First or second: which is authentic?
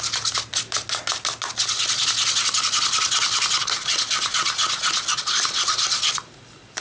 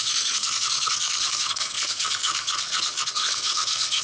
first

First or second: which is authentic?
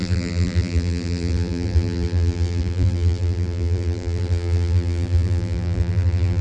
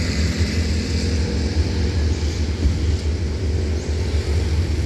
second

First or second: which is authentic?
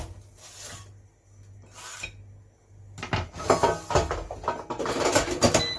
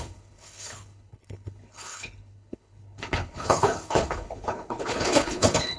first